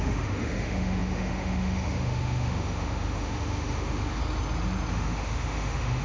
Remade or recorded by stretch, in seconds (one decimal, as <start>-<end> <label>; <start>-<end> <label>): 0.0-4.2 remade; 4.2-4.9 recorded; 4.9-6.0 remade